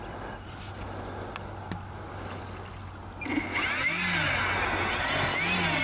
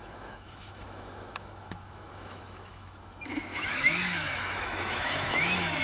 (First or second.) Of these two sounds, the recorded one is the first